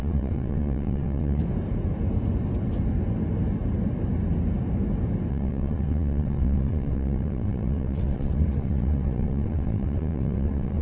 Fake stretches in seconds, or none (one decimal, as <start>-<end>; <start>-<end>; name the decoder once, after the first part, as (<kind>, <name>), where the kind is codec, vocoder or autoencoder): 0.0-1.4 (vocoder, WaveNeXt); 5.3-10.8